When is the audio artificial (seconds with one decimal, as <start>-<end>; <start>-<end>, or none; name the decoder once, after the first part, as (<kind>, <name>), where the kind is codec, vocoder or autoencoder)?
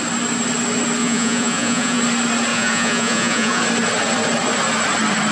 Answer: 1.0-2.0 (vocoder, Vocos); 2.5-3.6